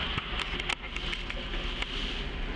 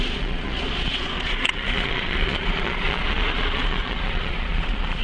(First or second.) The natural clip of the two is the first